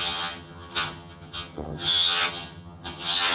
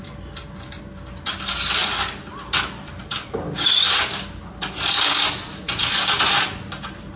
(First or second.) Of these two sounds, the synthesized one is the first